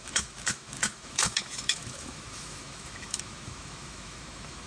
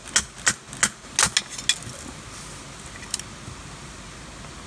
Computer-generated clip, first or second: first